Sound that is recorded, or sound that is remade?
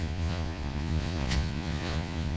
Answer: remade